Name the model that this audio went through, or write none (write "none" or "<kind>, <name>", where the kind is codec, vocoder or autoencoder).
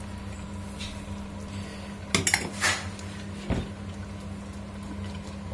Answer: none